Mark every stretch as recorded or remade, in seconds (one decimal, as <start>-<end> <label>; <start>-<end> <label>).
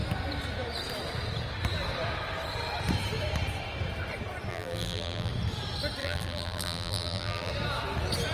0.0-4.5 recorded; 4.5-5.3 remade; 5.3-6.0 recorded; 6.0-7.5 remade; 7.5-8.3 recorded